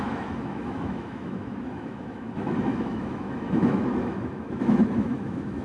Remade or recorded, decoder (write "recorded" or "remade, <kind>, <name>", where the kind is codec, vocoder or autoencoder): remade, autoencoder, DAC-VAE